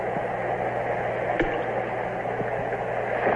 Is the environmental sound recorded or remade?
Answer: recorded